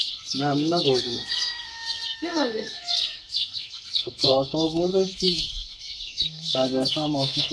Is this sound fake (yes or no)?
yes